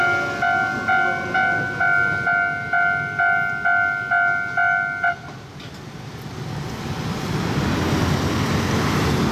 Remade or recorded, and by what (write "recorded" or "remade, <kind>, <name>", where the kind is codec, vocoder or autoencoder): recorded